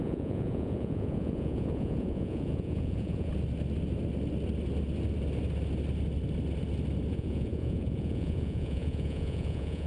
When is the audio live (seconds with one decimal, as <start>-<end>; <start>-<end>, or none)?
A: 3.3-7.1